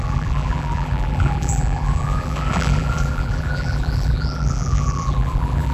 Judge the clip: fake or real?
fake